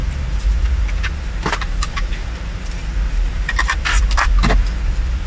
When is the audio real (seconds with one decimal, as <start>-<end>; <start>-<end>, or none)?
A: 1.0-1.6